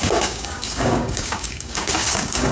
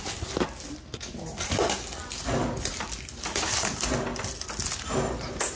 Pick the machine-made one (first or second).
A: first